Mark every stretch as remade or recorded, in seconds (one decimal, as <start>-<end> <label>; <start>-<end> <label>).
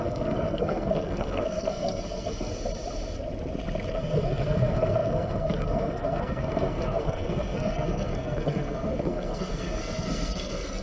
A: 0.0-2.5 remade; 2.5-3.9 recorded; 3.9-10.8 remade